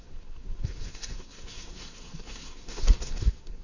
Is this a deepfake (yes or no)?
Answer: yes